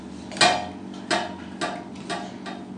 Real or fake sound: real